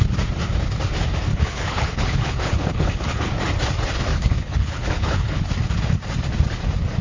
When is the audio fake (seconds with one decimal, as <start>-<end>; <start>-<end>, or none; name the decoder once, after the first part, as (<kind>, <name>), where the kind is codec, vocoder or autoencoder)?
1.3-3.3 (codec, HILCodec); 4.1-5.5